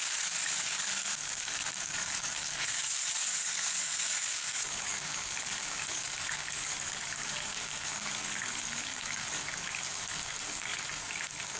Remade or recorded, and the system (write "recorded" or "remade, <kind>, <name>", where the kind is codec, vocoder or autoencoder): remade, codec, DAC